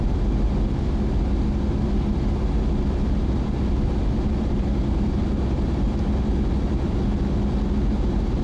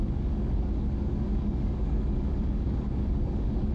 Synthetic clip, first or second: second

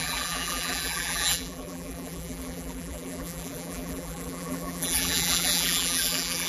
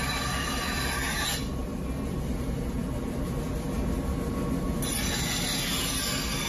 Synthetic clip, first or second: first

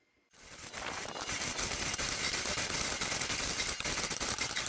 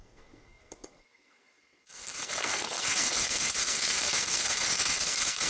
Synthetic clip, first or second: second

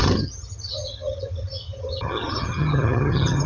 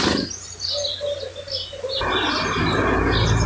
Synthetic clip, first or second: first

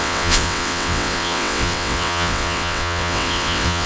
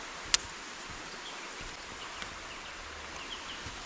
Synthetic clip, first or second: first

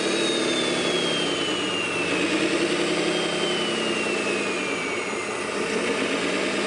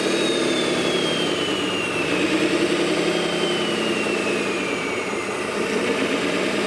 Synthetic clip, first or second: second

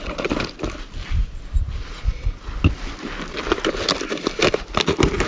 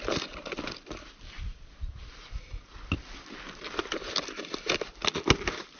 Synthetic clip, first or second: second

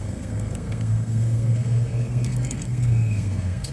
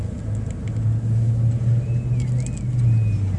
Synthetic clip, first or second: first